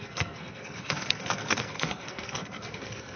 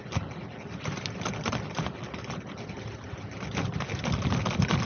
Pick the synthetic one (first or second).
first